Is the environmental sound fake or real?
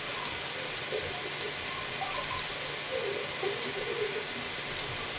real